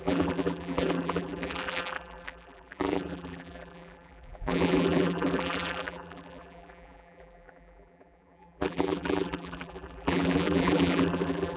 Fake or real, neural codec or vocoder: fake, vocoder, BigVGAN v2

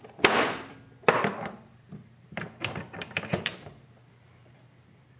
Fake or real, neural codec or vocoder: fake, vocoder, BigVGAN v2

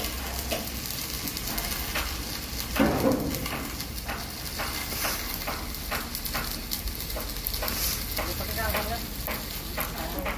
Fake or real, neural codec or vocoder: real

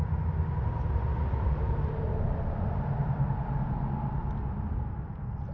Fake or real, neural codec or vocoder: real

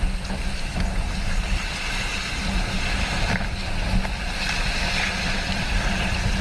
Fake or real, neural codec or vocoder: real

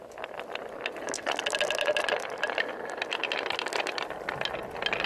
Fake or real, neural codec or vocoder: real